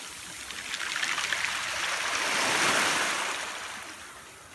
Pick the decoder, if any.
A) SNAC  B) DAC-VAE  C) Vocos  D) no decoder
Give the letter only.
D